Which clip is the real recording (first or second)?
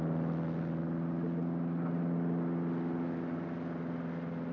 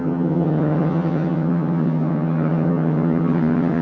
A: first